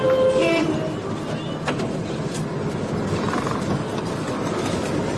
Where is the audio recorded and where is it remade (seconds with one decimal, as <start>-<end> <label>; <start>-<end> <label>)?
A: 0.0-5.2 recorded